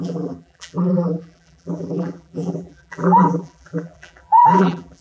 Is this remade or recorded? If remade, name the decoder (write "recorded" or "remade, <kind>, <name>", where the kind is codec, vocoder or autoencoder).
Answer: remade, vocoder, BigVGAN v2